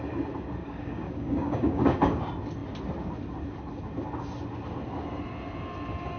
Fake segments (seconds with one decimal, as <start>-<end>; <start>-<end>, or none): 0.6-2.2